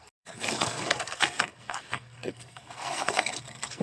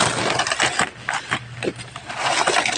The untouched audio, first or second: second